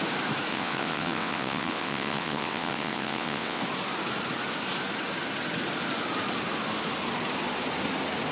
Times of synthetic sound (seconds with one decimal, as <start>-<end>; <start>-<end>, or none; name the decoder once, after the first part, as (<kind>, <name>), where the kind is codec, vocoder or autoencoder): 0.5-3.6 (vocoder, WaveNeXt)